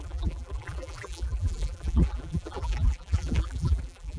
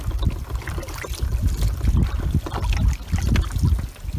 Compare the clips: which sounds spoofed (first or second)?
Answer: first